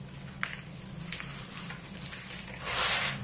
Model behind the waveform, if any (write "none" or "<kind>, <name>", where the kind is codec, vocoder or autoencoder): none